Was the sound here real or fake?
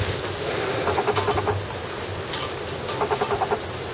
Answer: real